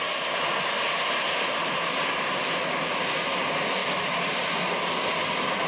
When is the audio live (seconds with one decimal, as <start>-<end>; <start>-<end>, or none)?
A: 0.0-3.8; 4.5-5.7

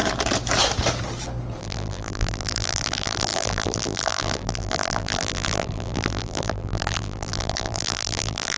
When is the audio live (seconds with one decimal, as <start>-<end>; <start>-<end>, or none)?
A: 0.0-1.6

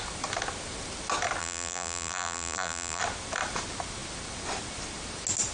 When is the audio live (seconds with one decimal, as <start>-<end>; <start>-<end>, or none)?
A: 0.0-1.4; 3.0-5.5

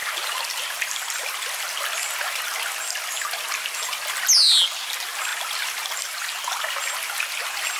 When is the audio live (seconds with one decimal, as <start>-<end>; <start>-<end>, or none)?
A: 0.0-7.8

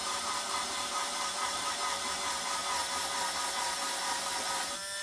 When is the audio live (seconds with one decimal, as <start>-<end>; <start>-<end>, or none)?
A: 2.1-5.0

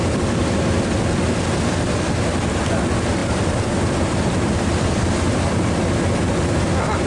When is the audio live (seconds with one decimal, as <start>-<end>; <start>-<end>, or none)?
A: 0.0-3.2; 5.7-7.1